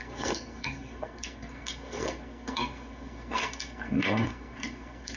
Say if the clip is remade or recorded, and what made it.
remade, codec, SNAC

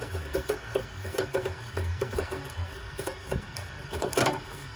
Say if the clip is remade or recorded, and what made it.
remade, codec, SNAC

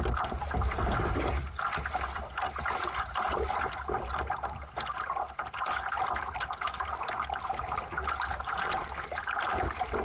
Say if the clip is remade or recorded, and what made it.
recorded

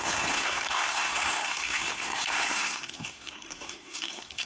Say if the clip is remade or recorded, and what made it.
remade, codec, SNAC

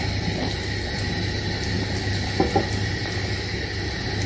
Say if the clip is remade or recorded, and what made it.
recorded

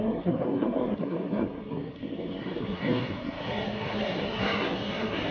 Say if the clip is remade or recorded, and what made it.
remade, codec, SNAC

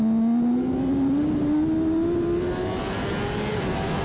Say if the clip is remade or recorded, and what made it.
recorded